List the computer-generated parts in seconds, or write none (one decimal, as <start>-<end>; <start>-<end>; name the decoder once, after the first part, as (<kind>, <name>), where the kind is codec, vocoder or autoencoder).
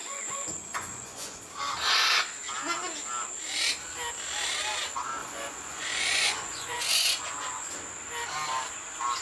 0.0-1.4 (vocoder, Vocos); 5.2-7.7